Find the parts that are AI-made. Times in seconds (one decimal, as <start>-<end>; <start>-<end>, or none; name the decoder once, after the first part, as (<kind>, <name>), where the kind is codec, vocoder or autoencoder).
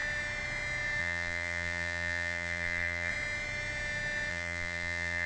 1.0-3.1 (vocoder, BigVGAN v2); 4.3-5.3